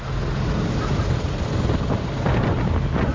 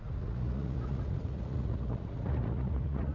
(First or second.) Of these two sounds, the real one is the first